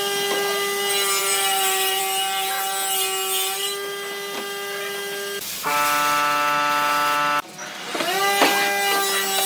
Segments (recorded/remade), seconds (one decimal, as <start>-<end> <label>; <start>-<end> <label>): 0.0-1.2 recorded; 1.2-2.0 remade; 2.0-9.5 recorded